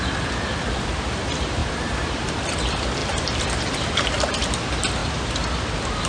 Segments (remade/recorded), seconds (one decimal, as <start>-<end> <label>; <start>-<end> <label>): 0.0-6.1 recorded